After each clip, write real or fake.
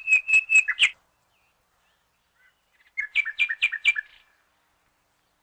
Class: real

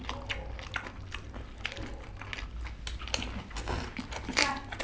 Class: real